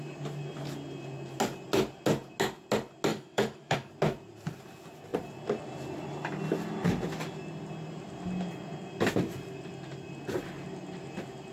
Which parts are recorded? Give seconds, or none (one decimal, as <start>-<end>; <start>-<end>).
0.0-3.1; 3.9-11.5